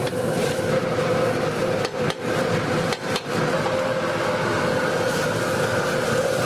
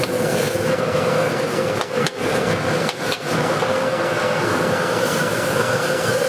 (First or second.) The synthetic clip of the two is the second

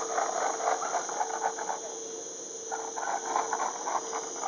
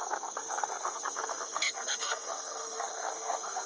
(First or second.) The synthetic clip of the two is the second